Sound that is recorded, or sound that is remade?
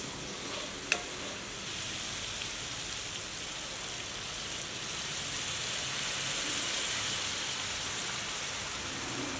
recorded